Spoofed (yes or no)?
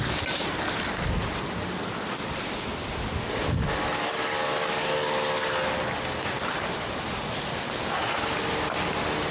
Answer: no